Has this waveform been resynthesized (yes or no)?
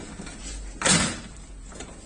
no